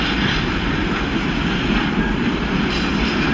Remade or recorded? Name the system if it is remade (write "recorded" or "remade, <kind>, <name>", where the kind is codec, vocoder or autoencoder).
remade, vocoder, BigVGAN v2